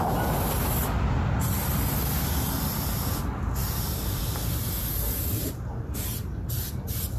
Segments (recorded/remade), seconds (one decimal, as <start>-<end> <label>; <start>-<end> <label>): 0.0-0.8 recorded; 0.8-4.2 remade; 4.2-7.2 recorded